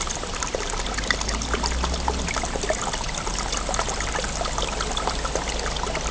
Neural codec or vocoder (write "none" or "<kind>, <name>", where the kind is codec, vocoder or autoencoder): none